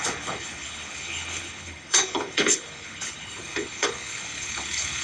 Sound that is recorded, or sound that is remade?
remade